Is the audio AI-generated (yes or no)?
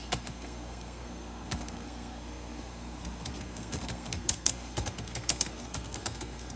yes